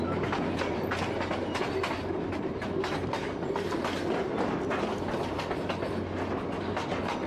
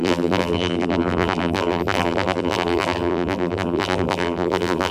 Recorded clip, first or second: first